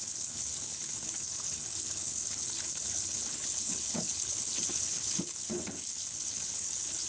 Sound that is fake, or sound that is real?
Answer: fake